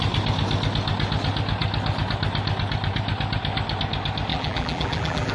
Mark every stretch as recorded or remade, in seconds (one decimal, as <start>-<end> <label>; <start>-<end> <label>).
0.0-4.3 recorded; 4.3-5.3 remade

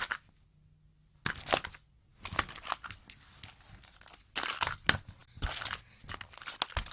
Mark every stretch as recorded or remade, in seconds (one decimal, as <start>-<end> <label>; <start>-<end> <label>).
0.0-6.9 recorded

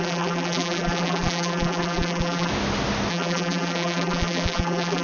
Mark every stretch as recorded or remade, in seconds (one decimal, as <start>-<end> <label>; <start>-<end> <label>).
0.0-2.5 remade; 2.5-3.1 recorded; 3.1-5.0 remade

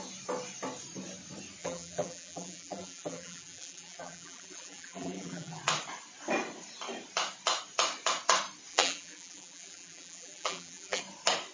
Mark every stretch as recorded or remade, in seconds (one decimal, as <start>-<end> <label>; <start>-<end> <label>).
0.0-1.6 recorded; 1.6-5.6 remade; 5.6-8.7 recorded; 8.7-11.0 remade; 11.0-11.5 recorded

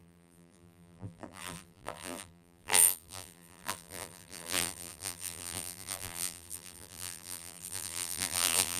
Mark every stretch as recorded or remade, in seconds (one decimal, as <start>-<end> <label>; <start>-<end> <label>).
0.0-8.8 remade

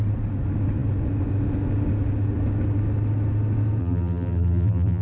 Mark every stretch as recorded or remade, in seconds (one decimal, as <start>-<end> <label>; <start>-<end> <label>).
0.0-3.8 recorded; 3.8-5.0 remade

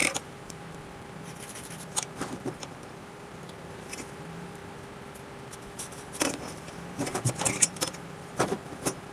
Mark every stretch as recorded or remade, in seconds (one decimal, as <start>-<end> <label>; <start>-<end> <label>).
0.0-4.6 remade; 4.6-5.7 recorded; 5.7-9.1 remade